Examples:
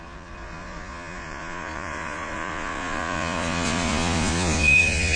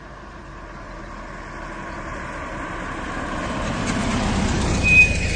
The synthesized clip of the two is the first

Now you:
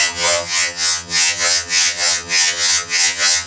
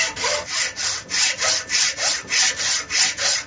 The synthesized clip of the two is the first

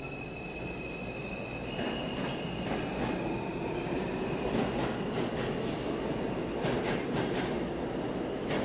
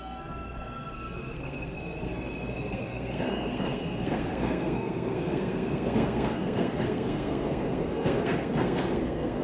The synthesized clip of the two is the second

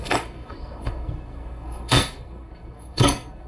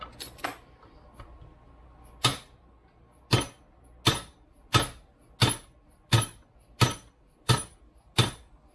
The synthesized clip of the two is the first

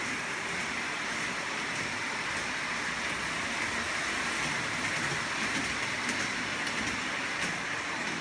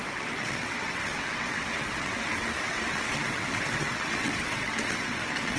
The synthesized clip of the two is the second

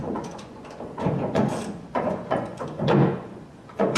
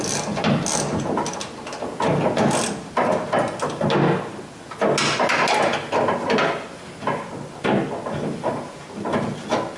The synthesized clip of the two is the first